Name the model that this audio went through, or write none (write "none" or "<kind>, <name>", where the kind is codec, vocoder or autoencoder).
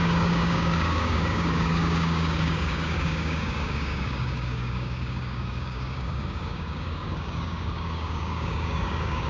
codec, DAC